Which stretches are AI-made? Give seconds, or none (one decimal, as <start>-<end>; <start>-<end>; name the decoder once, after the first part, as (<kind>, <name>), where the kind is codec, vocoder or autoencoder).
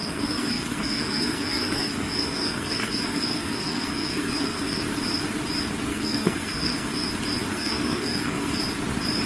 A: 0.0-4.9 (codec, SNAC); 5.9-7.1; 7.5-8.6